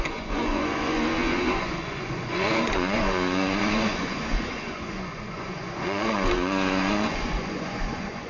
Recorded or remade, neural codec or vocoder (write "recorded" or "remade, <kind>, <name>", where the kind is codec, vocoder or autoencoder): remade, vocoder, Vocos